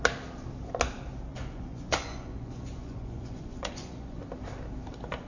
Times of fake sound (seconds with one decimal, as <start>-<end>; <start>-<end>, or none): 1.3-4.2